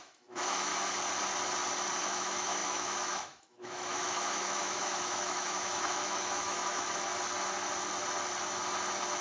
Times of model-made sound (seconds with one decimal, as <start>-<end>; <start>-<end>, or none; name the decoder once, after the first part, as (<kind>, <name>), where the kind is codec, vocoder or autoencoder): 0.0-0.7 (autoencoder, DAC-VAE); 2.0-7.1